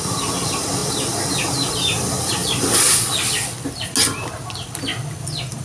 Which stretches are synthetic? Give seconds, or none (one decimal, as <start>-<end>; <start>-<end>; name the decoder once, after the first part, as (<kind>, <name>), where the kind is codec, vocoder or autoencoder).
2.4-3.3 (vocoder, BigVGAN v2)